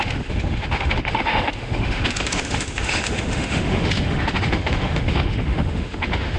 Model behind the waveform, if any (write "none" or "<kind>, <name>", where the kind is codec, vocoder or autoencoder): autoencoder, DAC-VAE